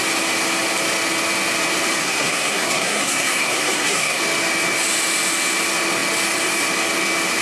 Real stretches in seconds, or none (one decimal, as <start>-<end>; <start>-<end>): 0.0-2.0; 4.2-7.4